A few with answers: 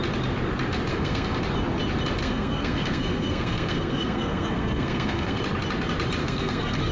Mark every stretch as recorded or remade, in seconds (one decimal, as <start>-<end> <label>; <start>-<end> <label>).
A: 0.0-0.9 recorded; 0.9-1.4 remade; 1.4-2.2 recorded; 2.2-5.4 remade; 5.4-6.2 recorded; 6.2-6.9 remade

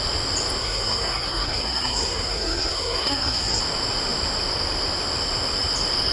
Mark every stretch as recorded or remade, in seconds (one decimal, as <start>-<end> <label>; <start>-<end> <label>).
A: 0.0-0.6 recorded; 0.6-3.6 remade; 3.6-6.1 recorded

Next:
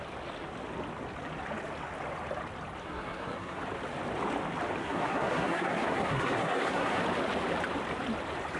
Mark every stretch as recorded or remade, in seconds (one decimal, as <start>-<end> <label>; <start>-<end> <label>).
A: 0.0-2.8 recorded; 2.8-3.6 remade; 3.6-4.8 recorded; 4.8-7.0 remade; 7.0-8.6 recorded